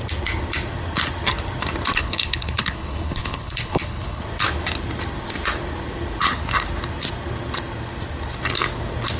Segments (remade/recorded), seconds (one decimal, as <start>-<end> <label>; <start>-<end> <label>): 0.0-2.0 recorded; 2.0-4.2 remade; 4.2-9.2 recorded